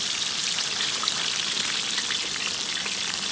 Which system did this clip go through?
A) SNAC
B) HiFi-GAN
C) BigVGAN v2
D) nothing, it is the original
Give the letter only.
D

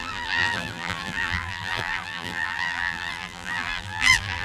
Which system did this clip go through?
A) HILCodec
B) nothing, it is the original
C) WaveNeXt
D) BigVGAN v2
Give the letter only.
D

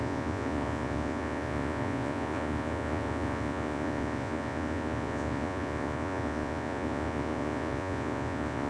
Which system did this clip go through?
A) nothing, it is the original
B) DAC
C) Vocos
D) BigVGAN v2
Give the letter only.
C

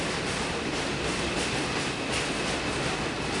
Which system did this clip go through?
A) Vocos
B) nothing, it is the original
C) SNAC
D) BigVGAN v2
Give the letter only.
B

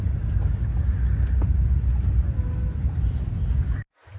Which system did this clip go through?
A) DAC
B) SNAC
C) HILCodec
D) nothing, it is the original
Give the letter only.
D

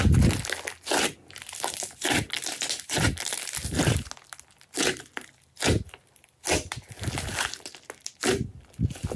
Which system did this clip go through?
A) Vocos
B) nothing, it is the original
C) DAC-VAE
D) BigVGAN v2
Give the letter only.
B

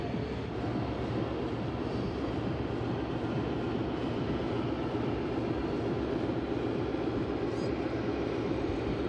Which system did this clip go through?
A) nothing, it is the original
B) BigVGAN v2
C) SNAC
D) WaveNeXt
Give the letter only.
A